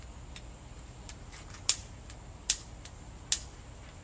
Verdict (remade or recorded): recorded